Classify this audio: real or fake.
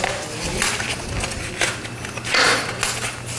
real